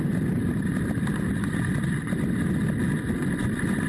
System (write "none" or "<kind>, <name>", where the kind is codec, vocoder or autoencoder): none